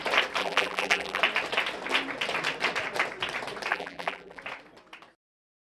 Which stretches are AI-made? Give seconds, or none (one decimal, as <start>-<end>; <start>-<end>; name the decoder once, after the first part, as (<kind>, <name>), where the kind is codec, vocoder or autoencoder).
0.4-1.2 (vocoder, BigVGAN v2); 3.7-4.4